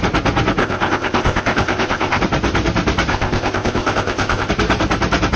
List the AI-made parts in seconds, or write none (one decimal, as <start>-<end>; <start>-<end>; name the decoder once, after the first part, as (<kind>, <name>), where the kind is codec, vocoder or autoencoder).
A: 0.6-2.2 (codec, ZipCodec); 3.1-4.5